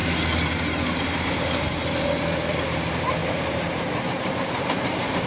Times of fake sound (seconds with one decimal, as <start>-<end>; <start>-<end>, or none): 2.5-5.3